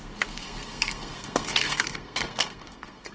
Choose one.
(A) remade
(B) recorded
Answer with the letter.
A